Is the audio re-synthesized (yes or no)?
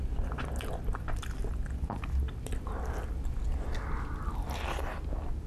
no